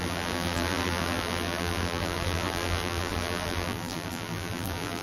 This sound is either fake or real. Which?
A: fake